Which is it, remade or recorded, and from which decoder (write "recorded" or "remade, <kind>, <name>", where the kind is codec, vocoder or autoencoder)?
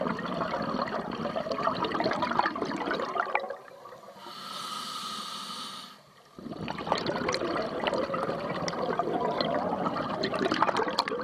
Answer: recorded